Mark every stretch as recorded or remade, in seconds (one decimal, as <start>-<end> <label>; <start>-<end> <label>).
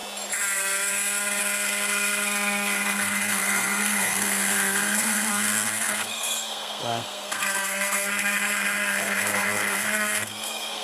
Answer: 0.0-1.4 recorded; 1.4-10.8 remade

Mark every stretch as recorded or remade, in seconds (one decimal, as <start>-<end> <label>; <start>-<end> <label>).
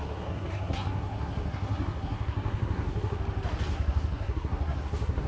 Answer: 0.0-3.2 remade; 3.2-3.7 recorded; 3.7-5.3 remade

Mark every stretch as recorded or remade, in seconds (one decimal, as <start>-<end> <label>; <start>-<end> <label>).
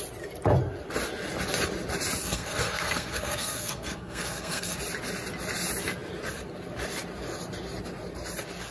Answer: 0.0-2.2 recorded; 2.2-4.8 remade; 4.8-8.7 recorded